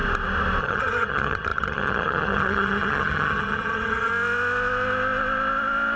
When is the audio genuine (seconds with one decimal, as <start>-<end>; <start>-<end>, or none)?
0.0-0.6; 4.1-6.0